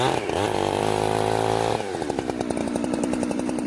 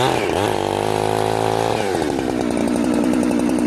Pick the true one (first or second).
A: second